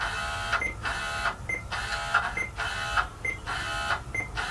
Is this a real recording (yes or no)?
yes